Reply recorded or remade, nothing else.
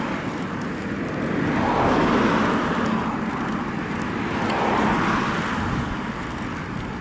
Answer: recorded